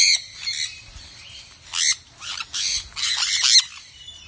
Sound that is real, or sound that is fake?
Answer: real